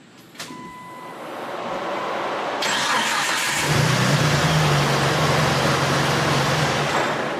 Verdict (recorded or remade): recorded